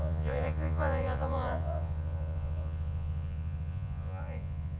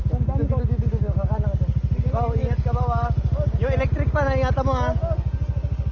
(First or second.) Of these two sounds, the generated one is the first